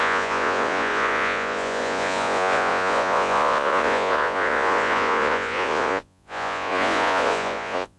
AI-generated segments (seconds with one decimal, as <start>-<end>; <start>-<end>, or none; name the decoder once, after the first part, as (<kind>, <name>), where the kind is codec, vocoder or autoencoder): 0.0-8.0 (vocoder, Vocos)